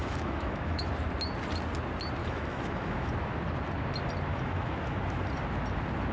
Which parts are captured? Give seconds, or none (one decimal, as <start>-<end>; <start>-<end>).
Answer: 0.9-2.2; 3.1-4.3; 5.0-6.1